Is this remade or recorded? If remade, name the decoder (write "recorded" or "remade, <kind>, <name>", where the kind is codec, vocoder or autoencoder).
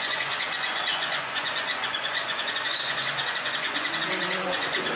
remade, vocoder, Vocos